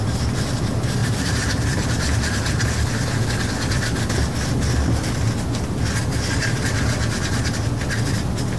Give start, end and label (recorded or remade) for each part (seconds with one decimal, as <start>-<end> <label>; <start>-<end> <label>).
0.0-1.0 recorded; 1.0-2.8 remade; 2.8-8.6 recorded